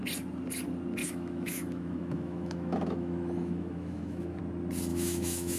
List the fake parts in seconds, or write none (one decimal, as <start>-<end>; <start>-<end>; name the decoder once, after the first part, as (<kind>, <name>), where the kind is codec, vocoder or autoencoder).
1.0-4.4 (autoencoder, DAC-VAE); 4.9-5.6